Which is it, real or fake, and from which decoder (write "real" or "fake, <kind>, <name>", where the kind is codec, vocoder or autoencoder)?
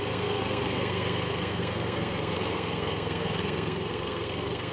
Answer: fake, codec, SNAC